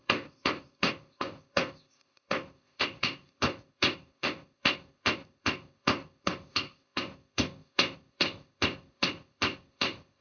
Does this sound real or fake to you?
fake